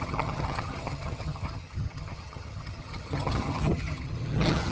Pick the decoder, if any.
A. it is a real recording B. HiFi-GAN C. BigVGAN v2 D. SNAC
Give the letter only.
B